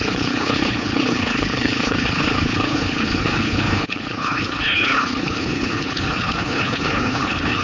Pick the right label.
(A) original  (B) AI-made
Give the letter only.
B